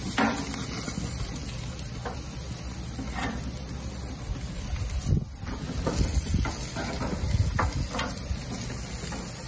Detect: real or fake real